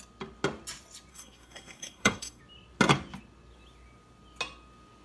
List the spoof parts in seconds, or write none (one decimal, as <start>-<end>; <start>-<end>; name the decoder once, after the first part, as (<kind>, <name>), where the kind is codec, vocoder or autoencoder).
1.1-2.4 (codec, SNAC)